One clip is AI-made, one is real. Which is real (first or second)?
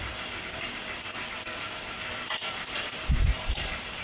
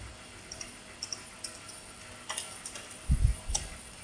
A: second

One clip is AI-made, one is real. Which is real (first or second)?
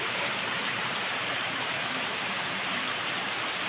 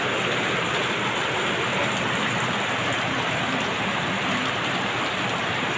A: second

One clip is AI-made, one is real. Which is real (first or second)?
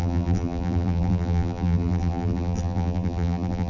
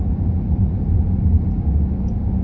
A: second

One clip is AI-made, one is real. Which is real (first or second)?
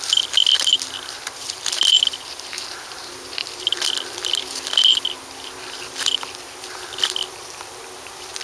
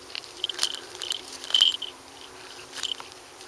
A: first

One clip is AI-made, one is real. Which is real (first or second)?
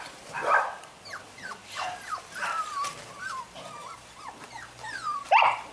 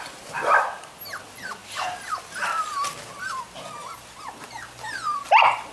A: second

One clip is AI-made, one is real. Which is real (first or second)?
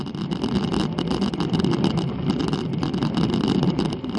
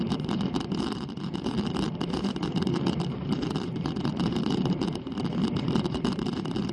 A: first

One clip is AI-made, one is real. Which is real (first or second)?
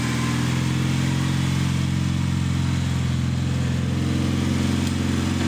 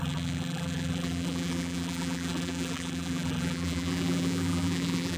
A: first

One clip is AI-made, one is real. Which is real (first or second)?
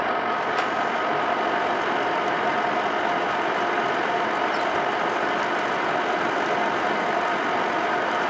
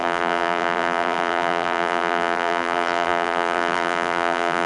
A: first